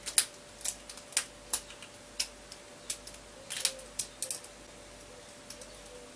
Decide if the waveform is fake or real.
real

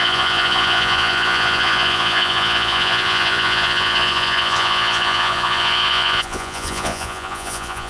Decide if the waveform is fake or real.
fake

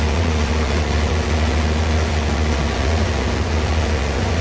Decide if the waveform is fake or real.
fake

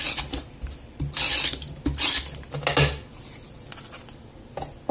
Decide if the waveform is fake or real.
real